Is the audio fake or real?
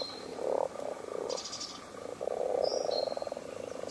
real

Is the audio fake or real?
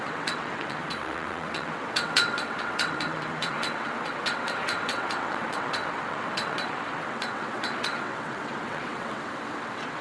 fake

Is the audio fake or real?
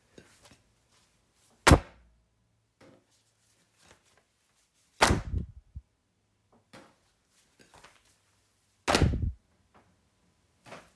real